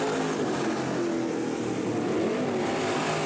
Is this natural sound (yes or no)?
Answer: yes